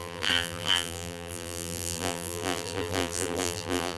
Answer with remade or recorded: remade